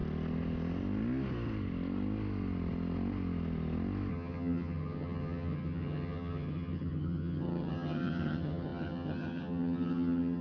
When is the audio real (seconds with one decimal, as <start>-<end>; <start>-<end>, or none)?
0.0-4.1